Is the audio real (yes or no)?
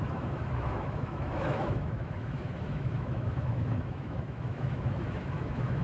no